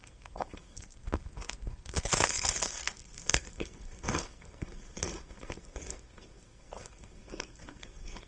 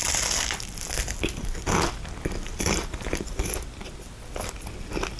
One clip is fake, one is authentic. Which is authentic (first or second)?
second